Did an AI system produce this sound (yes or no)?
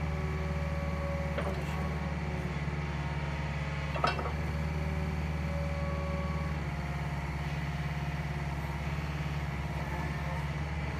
no